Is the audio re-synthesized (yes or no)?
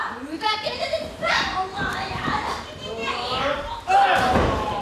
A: yes